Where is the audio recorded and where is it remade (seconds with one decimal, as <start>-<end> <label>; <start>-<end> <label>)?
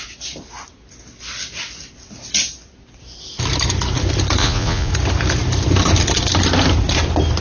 0.0-4.4 recorded; 4.4-4.9 remade; 4.9-7.4 recorded